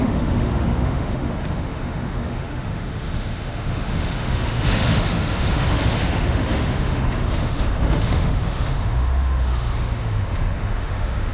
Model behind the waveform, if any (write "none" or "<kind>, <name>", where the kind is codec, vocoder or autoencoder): autoencoder, DAC-VAE